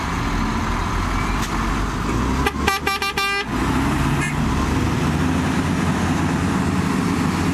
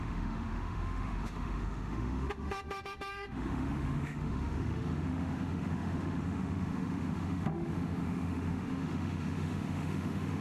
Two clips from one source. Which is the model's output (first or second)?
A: second